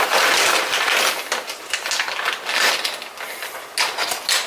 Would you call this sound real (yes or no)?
yes